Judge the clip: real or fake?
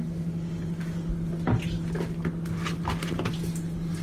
real